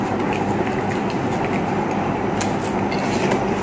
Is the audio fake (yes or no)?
no